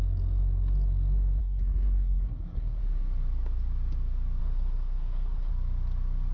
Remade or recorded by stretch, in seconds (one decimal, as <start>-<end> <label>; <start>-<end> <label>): 0.0-1.4 recorded; 1.4-2.8 remade; 2.8-4.4 recorded; 4.4-5.5 remade; 5.5-6.3 recorded